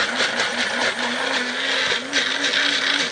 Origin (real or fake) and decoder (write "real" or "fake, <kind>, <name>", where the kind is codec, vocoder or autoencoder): real